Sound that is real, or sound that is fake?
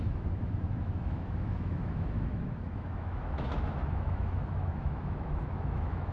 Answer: fake